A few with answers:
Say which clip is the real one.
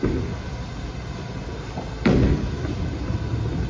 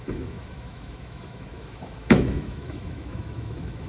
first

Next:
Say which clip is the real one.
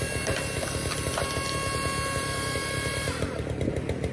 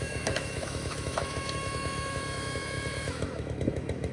first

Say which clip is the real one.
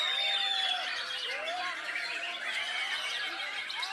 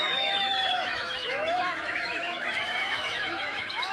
first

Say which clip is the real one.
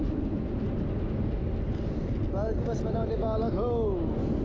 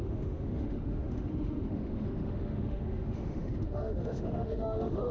first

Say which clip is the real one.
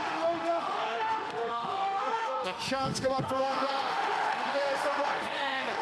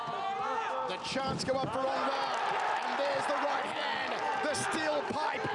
second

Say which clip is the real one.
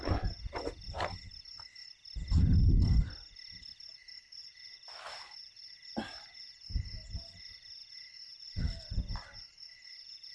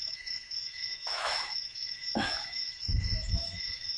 first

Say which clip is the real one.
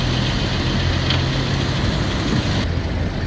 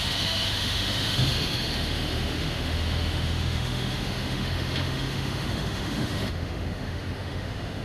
first